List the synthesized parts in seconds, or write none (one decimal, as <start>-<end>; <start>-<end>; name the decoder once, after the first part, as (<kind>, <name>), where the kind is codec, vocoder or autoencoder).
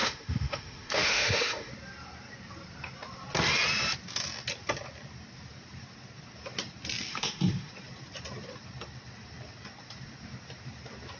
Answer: 0.0-1.7 (autoencoder, DAC-VAE); 7.1-7.7